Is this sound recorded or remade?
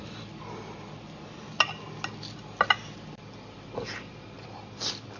recorded